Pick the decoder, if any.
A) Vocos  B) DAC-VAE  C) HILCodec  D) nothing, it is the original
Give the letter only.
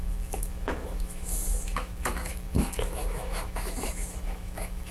B